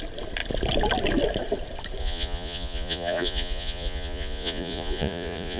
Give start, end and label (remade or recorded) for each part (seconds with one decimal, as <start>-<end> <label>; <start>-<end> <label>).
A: 0.0-2.0 recorded; 2.0-5.6 remade